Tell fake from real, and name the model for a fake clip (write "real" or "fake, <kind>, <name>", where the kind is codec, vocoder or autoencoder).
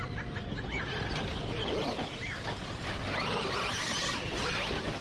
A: fake, vocoder, BigVGAN v2